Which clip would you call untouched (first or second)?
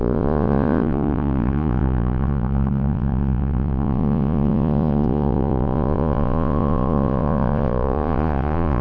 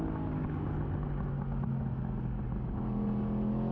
second